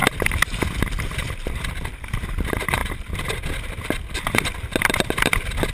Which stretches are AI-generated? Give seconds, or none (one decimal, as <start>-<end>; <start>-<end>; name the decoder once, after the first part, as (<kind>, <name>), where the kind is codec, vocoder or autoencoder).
none